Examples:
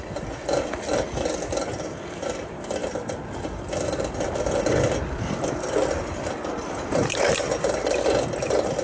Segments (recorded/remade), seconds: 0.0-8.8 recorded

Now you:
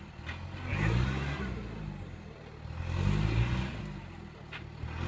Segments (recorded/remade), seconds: 0.0-5.1 recorded

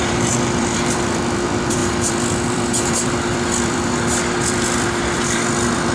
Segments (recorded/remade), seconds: 0.0-5.9 remade

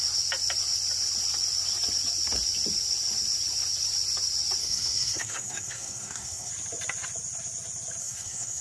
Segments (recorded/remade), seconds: 0.0-4.6 recorded; 4.6-6.5 remade; 6.5-8.0 recorded; 8.0-8.6 remade

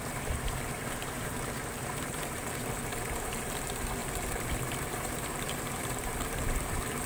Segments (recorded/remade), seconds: 0.0-7.1 remade

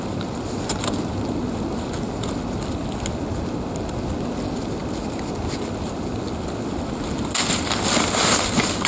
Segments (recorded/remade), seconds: 0.0-8.9 recorded

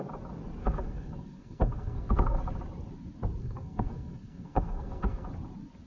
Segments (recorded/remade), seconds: 0.0-0.6 recorded; 0.6-2.4 remade; 2.4-3.4 recorded; 3.4-5.3 remade; 5.3-5.9 recorded